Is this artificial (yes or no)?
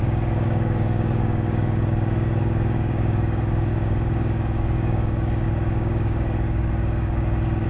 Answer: yes